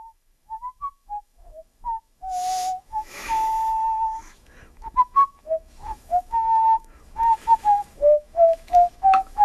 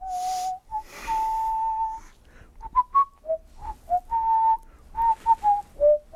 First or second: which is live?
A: second